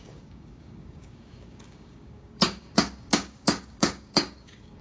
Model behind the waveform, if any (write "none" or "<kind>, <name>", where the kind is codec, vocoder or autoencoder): codec, DAC